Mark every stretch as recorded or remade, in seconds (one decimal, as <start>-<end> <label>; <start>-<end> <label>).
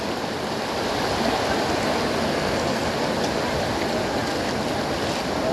0.0-2.3 recorded; 2.3-2.9 remade; 2.9-5.5 recorded